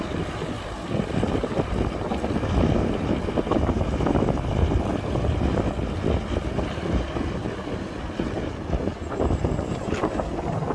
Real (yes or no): yes